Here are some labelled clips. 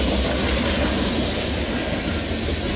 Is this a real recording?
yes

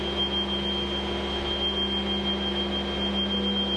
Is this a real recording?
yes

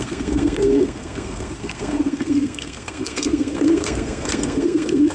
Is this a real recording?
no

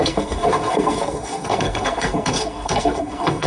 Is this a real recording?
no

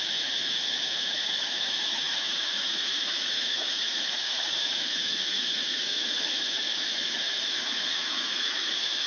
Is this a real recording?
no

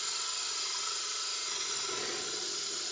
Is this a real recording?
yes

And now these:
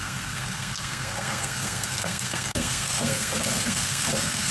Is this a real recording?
no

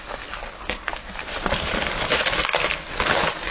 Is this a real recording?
yes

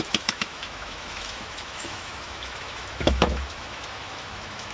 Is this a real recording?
no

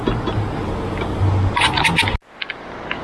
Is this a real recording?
yes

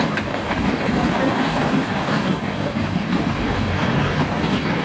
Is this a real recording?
no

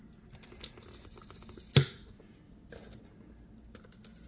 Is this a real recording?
yes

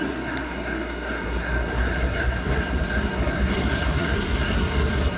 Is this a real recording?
no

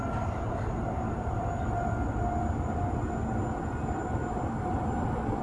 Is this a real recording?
yes